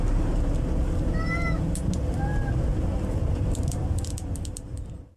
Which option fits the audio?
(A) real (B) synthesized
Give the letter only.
A